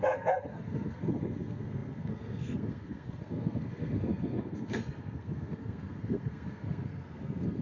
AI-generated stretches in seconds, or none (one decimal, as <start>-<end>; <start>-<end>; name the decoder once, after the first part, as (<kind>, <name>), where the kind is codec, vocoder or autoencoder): 0.0-7.6 (codec, SNAC)